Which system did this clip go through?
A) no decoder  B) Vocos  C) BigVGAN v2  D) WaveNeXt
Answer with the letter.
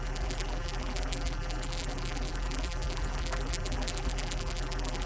C